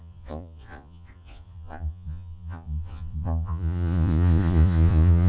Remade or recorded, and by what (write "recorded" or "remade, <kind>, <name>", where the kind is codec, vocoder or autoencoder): remade, vocoder, Vocos